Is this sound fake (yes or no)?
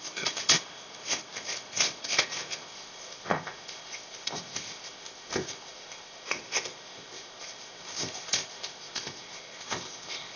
yes